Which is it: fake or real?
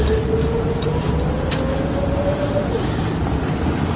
real